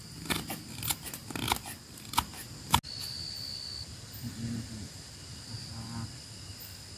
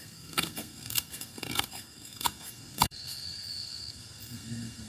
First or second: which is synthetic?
second